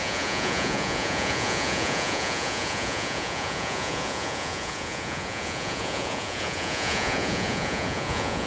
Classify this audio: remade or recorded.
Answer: remade